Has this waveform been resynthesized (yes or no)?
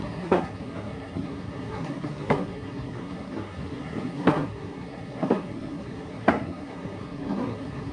yes